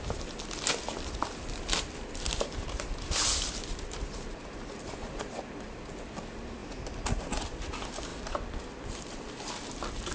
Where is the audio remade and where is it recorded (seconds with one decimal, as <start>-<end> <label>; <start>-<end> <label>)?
0.0-10.1 recorded